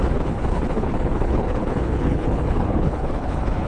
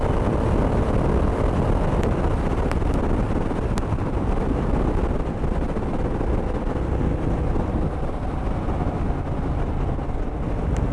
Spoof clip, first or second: first